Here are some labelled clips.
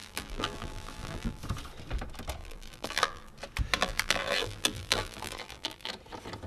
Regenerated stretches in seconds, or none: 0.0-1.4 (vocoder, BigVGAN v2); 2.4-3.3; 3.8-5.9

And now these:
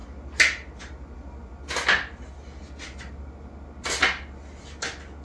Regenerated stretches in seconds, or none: none